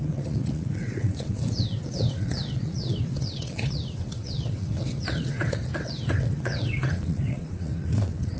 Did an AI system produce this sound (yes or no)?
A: yes